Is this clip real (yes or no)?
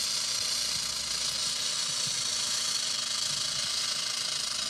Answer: yes